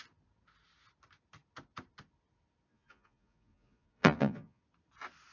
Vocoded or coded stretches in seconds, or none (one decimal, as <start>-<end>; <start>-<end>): 2.7-4.6